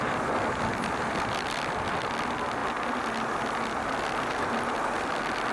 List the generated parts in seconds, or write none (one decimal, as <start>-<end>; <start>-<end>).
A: none